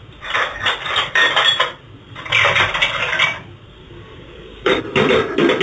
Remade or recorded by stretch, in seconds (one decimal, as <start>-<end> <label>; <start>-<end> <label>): 0.0-3.8 recorded; 3.8-4.8 remade; 4.8-5.6 recorded